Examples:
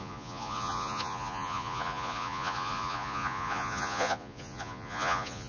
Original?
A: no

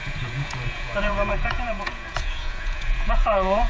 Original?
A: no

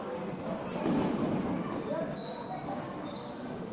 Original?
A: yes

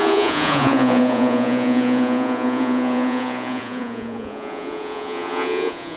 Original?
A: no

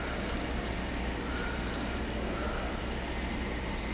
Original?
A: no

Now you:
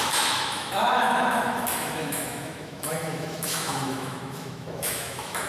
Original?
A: no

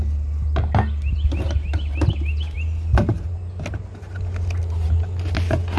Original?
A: yes